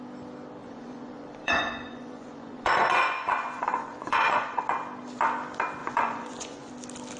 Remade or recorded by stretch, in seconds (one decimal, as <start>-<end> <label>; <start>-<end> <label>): 0.0-0.6 recorded; 0.6-4.6 remade; 4.6-5.8 recorded; 5.8-6.7 remade; 6.7-7.2 recorded